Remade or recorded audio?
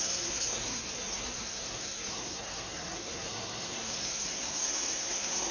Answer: remade